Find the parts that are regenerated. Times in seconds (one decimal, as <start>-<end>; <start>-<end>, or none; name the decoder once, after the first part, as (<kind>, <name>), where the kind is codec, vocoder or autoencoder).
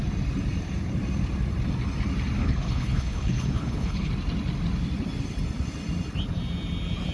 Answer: 2.4-4.1 (codec, HILCodec)